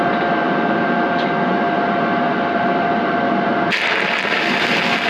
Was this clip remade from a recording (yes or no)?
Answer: no